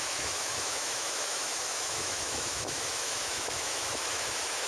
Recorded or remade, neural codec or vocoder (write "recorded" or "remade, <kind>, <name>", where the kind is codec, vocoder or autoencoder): remade, autoencoder, DAC-VAE